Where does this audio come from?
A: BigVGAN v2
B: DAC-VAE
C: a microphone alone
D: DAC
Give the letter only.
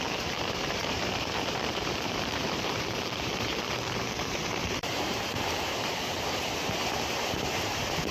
A